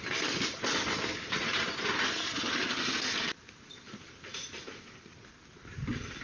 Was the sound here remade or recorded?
recorded